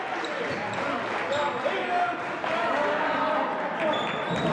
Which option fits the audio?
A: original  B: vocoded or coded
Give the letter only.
A